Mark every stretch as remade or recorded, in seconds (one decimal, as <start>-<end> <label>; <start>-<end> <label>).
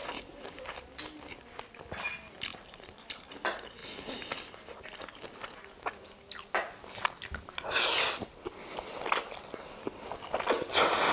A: 0.0-1.0 remade; 1.0-2.5 recorded; 2.5-3.3 remade; 3.3-11.1 recorded